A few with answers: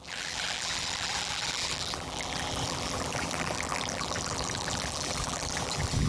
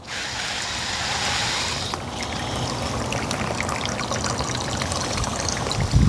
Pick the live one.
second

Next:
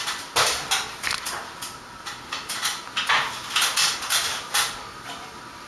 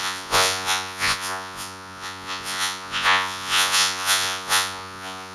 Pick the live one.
first